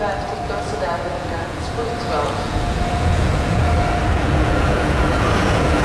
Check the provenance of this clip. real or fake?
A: fake